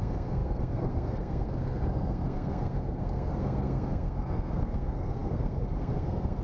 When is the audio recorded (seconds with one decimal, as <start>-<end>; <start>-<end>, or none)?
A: none